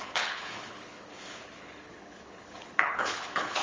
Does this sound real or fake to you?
fake